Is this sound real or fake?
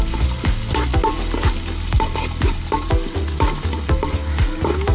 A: real